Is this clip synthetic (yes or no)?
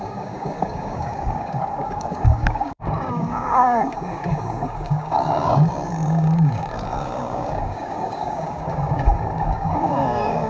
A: yes